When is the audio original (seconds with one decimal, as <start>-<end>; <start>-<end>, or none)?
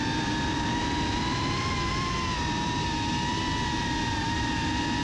0.0-5.0